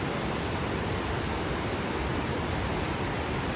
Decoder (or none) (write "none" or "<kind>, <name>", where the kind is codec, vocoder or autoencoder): none